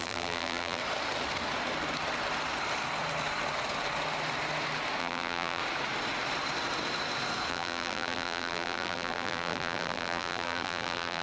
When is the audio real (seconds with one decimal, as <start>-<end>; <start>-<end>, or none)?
0.8-5.0; 5.6-7.5